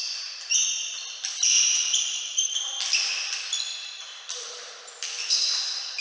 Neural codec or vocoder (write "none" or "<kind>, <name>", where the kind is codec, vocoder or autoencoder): vocoder, BigVGAN v2